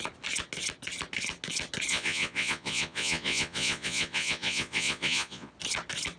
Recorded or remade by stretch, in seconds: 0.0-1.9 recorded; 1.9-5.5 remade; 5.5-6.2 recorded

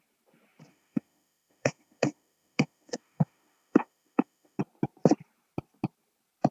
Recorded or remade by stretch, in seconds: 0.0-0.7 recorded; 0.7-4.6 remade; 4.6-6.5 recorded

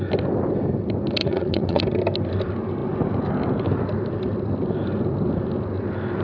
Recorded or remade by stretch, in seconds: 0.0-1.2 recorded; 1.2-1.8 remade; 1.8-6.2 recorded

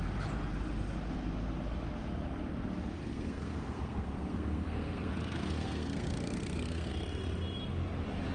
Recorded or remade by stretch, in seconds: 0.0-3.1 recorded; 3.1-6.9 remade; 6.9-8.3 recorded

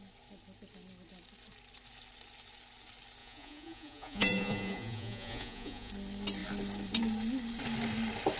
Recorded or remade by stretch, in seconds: 0.0-3.2 recorded; 3.2-5.9 remade; 5.9-8.4 recorded

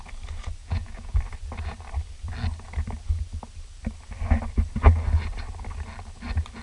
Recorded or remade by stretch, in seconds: 0.0-0.6 recorded; 0.6-1.2 remade; 1.2-6.6 recorded